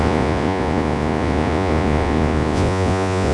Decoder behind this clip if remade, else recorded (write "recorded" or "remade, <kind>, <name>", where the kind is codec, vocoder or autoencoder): remade, vocoder, Vocos